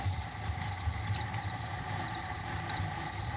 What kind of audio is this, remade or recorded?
remade